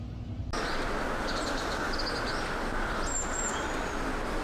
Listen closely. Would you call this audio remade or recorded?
recorded